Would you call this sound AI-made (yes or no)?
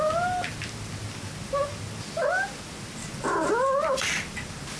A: no